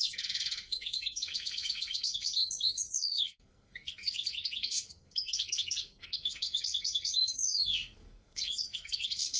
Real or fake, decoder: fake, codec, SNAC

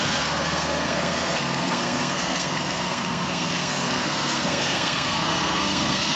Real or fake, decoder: fake, codec, SNAC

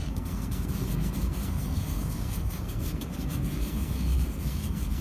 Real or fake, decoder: fake, codec, SNAC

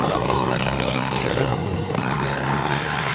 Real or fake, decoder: fake, codec, SNAC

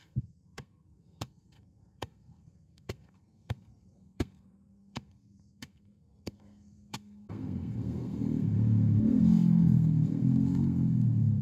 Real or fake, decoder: fake, codec, SNAC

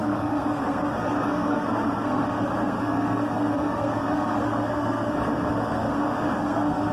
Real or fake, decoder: fake, codec, SNAC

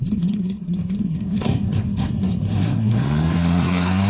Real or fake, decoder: fake, codec, SNAC